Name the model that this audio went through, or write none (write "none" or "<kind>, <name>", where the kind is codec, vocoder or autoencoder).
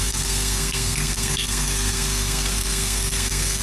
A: codec, SNAC